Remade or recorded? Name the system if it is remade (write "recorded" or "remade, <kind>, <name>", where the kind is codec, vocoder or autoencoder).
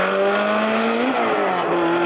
recorded